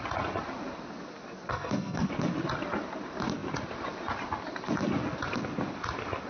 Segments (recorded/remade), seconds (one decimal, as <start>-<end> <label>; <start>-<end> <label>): 0.0-1.5 recorded; 1.5-2.1 remade; 2.1-6.3 recorded